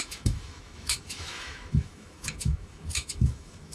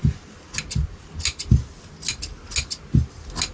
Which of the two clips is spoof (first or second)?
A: first